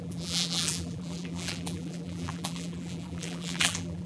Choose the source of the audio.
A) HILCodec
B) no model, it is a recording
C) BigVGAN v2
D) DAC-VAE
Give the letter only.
C